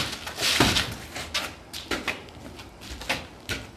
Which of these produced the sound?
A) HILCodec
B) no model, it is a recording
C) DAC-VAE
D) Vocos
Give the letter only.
B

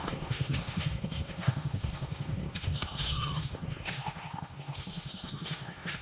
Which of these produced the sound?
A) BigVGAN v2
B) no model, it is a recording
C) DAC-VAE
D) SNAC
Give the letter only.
D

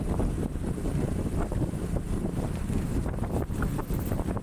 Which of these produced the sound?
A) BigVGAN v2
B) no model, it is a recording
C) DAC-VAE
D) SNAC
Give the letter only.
B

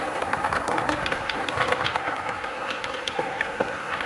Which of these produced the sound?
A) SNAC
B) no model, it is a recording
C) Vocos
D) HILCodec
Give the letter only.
A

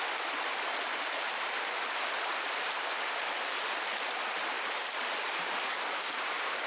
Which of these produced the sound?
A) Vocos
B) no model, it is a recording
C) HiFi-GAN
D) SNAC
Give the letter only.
B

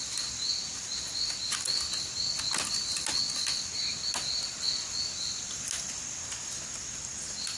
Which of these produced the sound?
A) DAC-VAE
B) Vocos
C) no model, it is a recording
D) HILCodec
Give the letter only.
C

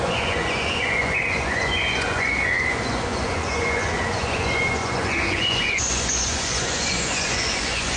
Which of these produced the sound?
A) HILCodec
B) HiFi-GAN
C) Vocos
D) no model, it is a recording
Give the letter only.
C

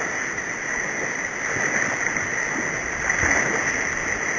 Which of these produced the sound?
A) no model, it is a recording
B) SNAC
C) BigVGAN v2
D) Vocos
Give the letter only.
A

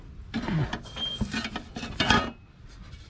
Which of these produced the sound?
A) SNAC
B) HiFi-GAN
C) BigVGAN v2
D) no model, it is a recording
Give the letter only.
D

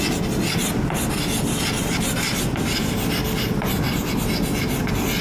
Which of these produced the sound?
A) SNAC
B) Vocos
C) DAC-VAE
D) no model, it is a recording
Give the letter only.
D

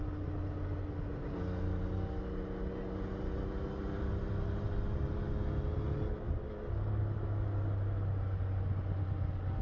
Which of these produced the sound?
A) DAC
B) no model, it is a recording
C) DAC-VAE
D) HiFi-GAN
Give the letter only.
B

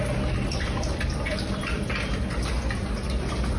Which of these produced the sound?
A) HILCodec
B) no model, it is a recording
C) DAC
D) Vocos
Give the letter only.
B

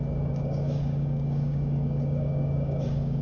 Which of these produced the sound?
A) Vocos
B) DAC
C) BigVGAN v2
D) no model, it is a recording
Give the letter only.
B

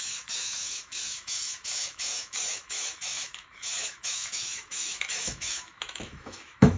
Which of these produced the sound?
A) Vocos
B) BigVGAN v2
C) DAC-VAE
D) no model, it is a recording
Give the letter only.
C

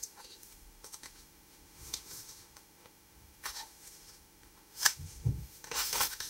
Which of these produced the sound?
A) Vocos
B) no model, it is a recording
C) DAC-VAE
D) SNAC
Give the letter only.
C